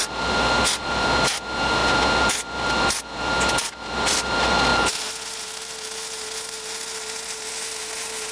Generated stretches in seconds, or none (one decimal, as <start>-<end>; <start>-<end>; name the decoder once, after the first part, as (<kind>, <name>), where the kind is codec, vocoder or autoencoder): none